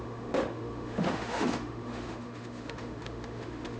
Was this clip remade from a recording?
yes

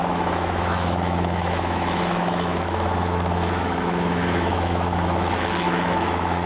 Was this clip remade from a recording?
yes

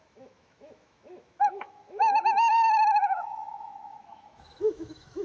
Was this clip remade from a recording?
yes